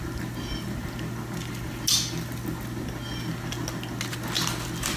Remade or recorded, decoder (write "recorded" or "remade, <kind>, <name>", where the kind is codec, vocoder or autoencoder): recorded